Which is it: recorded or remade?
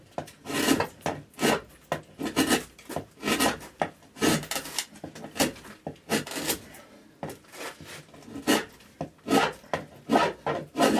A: recorded